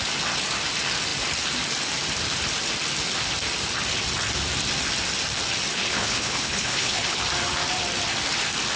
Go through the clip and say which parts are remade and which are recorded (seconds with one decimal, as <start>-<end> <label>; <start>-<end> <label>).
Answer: 0.0-5.7 recorded; 5.7-7.2 remade; 7.2-8.8 recorded